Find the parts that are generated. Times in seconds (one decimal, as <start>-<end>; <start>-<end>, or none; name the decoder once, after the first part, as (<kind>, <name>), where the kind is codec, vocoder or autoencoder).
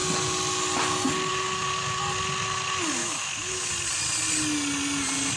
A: 3.0-3.7 (autoencoder, DAC-VAE)